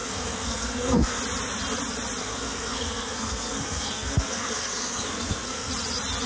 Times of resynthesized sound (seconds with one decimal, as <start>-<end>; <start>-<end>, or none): 0.0-1.2; 2.2-5.7